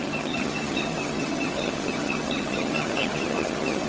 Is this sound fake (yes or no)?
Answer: yes